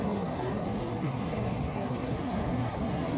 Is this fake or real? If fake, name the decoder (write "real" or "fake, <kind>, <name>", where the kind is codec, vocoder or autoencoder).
fake, codec, SNAC